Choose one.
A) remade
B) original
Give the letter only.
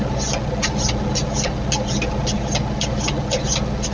B